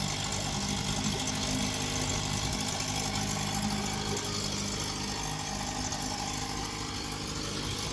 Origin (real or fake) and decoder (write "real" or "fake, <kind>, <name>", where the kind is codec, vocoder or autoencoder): real